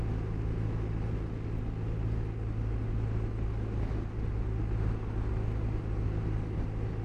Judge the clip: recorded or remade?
recorded